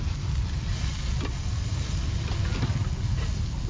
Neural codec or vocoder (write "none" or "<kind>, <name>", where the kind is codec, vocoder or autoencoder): none